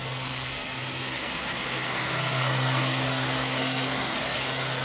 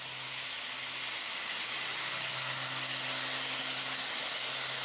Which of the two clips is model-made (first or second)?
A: first